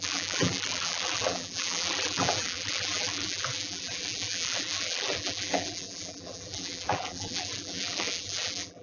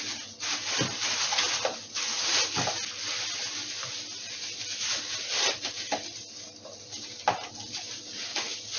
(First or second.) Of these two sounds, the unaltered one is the second